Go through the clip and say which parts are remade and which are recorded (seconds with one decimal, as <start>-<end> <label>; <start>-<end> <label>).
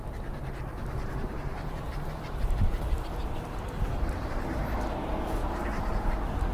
0.0-0.8 recorded; 0.8-4.6 remade; 4.6-5.4 recorded; 5.4-6.0 remade; 6.0-6.5 recorded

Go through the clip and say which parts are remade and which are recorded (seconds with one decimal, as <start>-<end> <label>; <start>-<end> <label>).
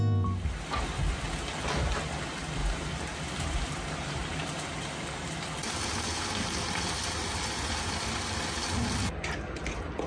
0.0-2.6 recorded; 2.6-4.6 remade; 4.6-10.1 recorded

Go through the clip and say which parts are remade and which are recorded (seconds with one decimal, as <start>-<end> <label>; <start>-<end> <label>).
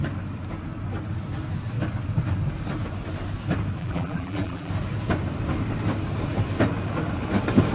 0.0-3.8 recorded; 3.8-4.7 remade; 4.7-7.7 recorded